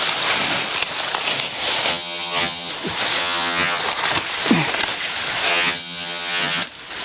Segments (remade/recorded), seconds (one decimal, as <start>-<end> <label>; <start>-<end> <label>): 0.0-1.9 recorded; 1.9-2.7 remade; 2.7-3.2 recorded; 3.2-3.8 remade; 3.8-5.5 recorded; 5.5-6.6 remade; 6.6-7.0 recorded